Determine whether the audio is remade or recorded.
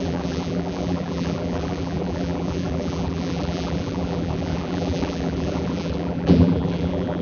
remade